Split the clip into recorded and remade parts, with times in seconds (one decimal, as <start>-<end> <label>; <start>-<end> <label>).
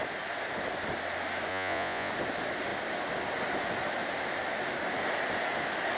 0.0-1.5 recorded; 1.5-2.1 remade; 2.1-6.0 recorded